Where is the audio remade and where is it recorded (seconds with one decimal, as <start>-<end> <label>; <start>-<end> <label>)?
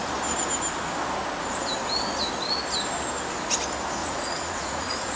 0.0-4.0 recorded; 4.0-5.2 remade